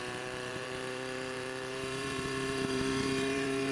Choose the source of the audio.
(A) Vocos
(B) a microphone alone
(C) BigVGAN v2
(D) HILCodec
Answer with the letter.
C